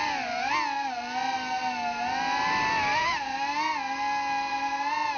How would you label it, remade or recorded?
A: recorded